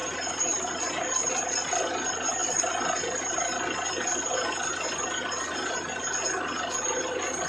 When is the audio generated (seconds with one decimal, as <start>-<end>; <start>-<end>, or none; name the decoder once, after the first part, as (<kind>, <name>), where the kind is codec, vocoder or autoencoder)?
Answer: none